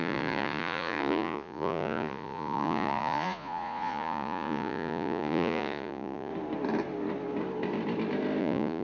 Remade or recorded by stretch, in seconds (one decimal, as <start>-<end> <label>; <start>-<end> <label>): 0.0-6.3 remade; 6.3-8.4 recorded; 8.4-8.8 remade

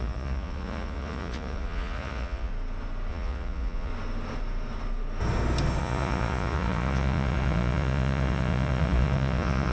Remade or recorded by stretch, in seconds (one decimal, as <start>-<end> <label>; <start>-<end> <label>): 0.0-2.5 remade; 2.5-3.1 recorded; 3.1-3.9 remade; 3.9-5.8 recorded; 5.8-9.7 remade